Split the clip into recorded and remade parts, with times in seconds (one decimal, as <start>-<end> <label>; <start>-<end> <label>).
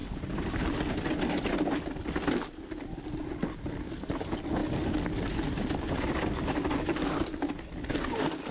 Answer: 0.0-0.7 remade; 0.7-8.5 recorded